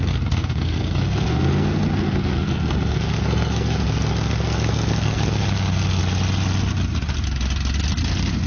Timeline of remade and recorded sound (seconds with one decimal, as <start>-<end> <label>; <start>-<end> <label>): 0.0-6.0 remade; 6.0-8.5 recorded